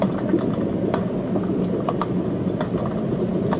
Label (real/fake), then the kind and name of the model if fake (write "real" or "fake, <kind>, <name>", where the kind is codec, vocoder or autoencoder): real